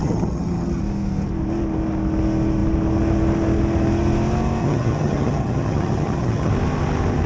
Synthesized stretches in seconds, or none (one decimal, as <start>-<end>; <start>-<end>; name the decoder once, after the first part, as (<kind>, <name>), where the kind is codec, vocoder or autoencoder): 0.0-0.8 (vocoder, HiFi-GAN); 4.6-6.5